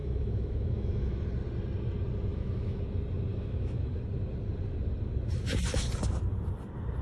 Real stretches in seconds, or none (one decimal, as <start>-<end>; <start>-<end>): 1.2-2.3; 2.8-3.3; 4.0-7.0